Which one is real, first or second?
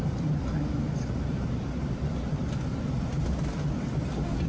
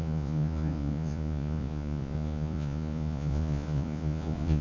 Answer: first